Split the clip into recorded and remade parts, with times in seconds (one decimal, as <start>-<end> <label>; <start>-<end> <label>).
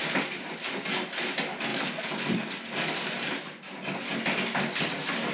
0.0-0.9 remade; 0.9-1.7 recorded; 1.7-3.1 remade; 3.1-5.3 recorded